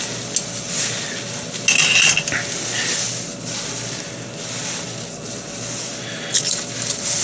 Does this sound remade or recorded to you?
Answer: recorded